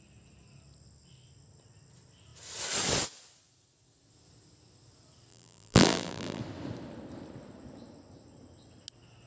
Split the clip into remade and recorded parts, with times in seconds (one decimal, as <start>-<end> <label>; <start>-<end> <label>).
0.0-5.3 recorded; 5.3-6.4 remade; 6.4-9.3 recorded